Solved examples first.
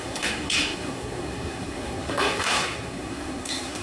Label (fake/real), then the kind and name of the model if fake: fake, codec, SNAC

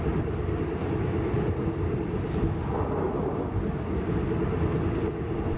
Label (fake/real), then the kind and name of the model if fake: real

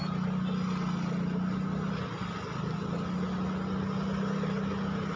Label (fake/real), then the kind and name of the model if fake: real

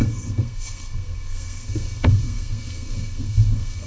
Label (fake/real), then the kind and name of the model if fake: fake, codec, SNAC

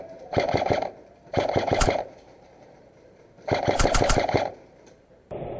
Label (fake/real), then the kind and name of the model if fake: fake, vocoder, BigVGAN v2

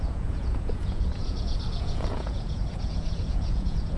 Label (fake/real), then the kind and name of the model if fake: fake, vocoder, Vocos